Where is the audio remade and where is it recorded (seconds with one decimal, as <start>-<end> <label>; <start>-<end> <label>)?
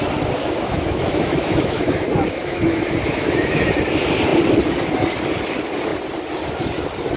0.0-0.4 recorded; 0.4-3.7 remade; 3.7-7.2 recorded